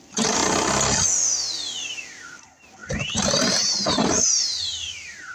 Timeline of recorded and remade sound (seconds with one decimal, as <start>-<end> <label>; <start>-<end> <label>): 0.0-0.4 remade; 0.4-1.5 recorded; 1.5-5.3 remade